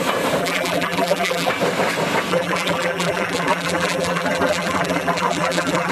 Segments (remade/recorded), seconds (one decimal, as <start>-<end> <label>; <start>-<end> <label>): 0.0-0.4 recorded; 0.4-1.5 remade; 1.5-2.3 recorded; 2.3-5.9 remade